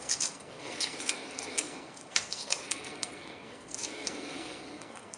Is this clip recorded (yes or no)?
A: no